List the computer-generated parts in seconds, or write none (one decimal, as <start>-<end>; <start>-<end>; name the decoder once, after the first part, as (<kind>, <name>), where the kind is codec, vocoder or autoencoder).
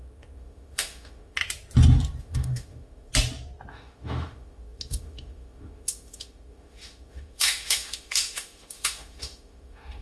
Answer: 0.0-1.4 (autoencoder, DAC-VAE); 2.2-3.1; 3.7-10.0